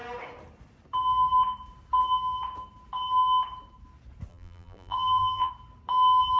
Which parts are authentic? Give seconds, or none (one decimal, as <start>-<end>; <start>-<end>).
0.0-4.3; 5.5-6.4